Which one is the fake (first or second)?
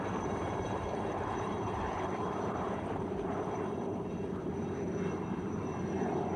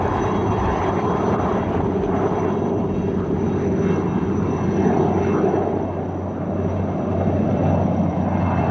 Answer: first